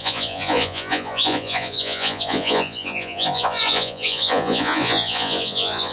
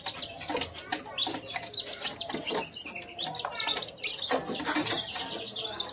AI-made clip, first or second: first